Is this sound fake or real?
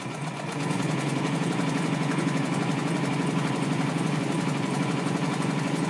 fake